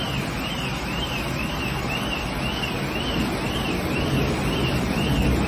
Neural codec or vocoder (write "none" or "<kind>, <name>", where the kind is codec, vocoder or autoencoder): none